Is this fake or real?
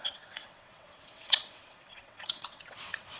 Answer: fake